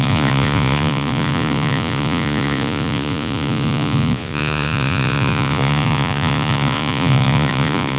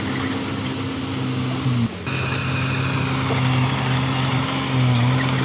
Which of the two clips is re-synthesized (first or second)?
first